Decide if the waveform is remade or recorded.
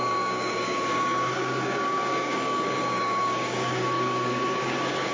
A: remade